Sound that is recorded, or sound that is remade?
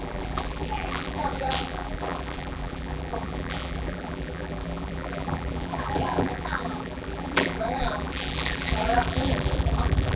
remade